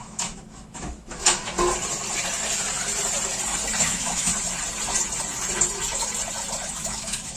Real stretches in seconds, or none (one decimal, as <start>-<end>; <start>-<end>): 1.4-3.8; 4.3-6.8